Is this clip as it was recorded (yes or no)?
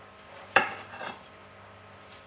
no